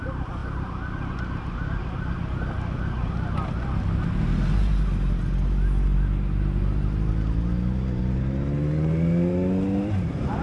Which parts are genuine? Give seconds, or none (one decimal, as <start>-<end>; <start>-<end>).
0.0-10.4